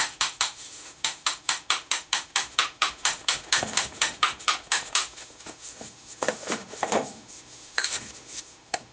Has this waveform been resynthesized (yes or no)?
yes